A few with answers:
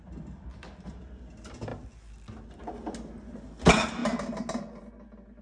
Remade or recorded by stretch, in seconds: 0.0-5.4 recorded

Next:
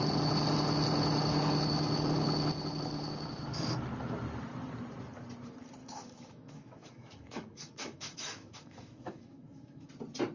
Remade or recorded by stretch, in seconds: 0.0-5.8 recorded; 5.8-9.9 remade; 9.9-10.3 recorded

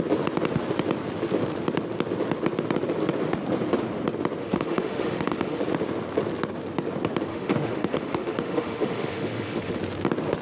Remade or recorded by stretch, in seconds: 0.0-4.4 recorded; 4.4-5.6 remade; 5.6-7.3 recorded; 7.3-9.8 remade; 9.8-10.4 recorded

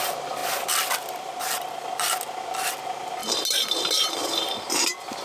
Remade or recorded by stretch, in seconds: 0.0-5.2 recorded

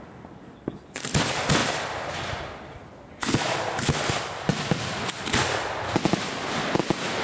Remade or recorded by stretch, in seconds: 0.0-7.2 recorded

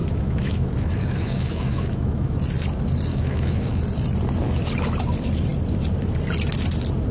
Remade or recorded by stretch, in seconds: 0.0-2.4 remade; 2.4-3.1 recorded; 3.1-3.8 remade; 3.8-7.1 recorded

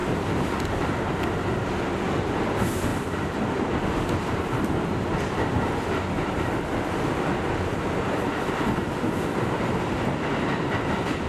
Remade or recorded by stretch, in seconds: 0.0-11.3 recorded

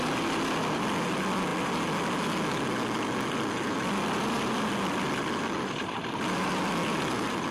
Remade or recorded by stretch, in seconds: 0.0-7.5 recorded